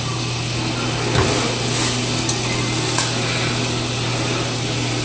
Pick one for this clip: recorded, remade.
recorded